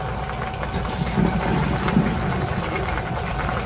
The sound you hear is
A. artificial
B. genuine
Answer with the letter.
B